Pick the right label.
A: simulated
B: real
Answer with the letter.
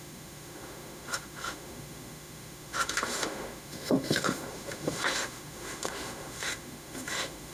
A